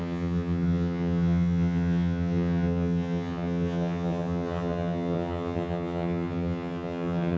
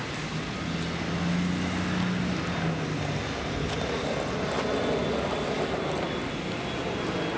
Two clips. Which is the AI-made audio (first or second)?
first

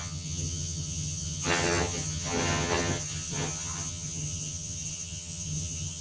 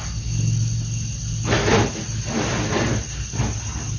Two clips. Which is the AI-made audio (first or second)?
first